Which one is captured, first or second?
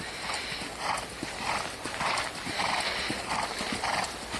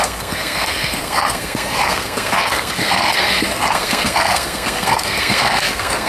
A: first